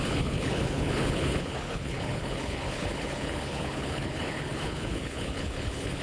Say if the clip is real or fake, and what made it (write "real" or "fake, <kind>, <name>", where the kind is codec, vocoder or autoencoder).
fake, codec, HILCodec